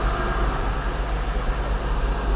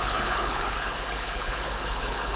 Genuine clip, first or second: first